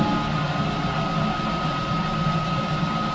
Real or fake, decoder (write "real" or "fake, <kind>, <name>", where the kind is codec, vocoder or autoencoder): real